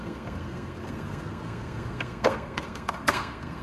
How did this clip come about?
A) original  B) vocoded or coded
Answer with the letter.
B